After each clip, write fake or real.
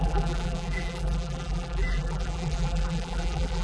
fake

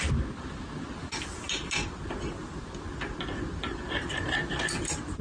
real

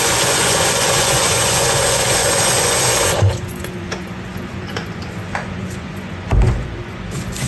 fake